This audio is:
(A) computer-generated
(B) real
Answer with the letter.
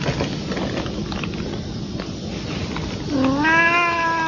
B